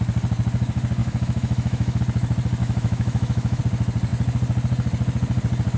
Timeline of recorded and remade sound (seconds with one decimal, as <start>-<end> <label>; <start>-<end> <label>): 0.0-1.0 recorded; 1.0-2.0 remade; 2.0-2.6 recorded; 2.6-3.6 remade; 3.6-5.8 recorded